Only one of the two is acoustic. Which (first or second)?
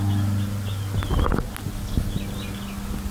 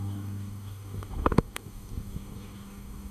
first